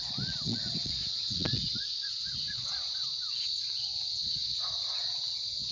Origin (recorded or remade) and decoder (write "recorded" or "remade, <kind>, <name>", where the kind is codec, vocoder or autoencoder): remade, vocoder, Vocos